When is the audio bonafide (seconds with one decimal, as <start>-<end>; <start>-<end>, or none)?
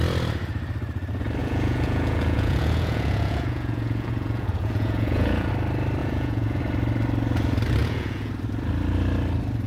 0.0-1.4; 5.5-6.0; 6.6-7.8; 8.3-9.7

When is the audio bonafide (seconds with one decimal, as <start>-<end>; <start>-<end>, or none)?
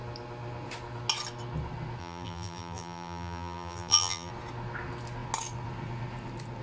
0.0-2.0; 4.3-6.6